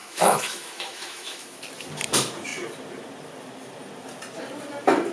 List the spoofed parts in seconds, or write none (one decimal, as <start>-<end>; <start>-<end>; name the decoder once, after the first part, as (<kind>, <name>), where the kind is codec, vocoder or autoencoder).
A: 0.0-1.6 (autoencoder, DAC-VAE)